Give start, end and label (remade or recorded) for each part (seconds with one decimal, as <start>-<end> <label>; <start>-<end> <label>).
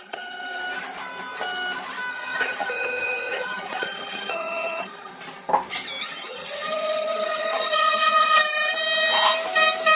0.0-0.6 remade; 0.6-2.1 recorded; 2.1-5.1 remade; 5.1-6.0 recorded; 6.0-8.4 remade; 8.4-10.0 recorded